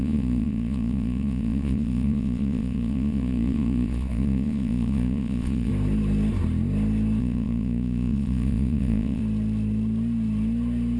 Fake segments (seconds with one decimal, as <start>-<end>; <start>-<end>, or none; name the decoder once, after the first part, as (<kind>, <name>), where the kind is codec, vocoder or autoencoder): 0.0-5.7 (vocoder, Vocos); 7.2-9.2